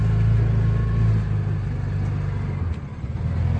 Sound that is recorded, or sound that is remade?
recorded